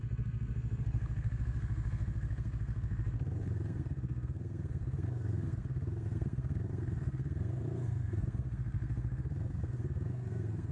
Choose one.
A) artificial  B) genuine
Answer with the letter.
A